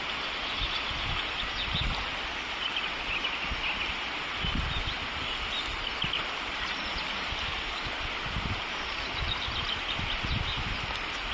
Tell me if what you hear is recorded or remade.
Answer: recorded